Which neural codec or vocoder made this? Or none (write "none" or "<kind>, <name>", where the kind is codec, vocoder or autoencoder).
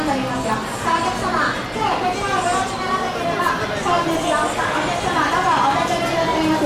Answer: none